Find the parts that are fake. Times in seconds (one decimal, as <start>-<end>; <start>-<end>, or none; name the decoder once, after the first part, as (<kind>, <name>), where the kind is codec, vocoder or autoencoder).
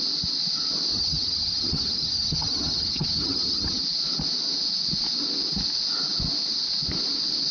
0.9-3.8 (vocoder, HiFi-GAN)